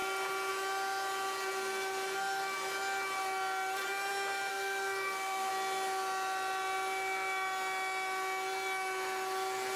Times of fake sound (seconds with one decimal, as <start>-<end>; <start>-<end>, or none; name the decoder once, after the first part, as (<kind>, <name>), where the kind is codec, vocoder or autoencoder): 4.5-5.5 (codec, SNAC)